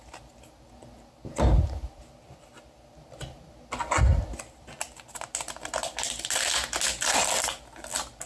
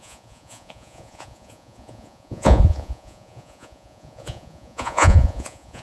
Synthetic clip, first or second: second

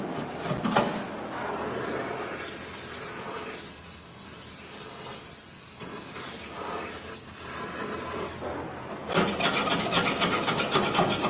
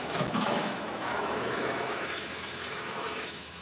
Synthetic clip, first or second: second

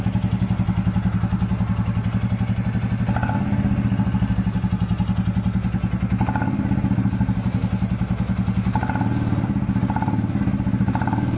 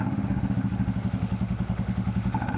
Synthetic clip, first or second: second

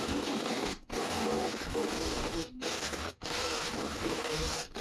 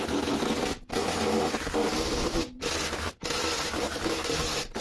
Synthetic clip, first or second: first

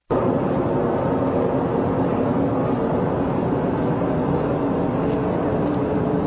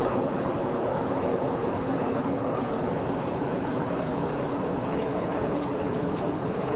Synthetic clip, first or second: second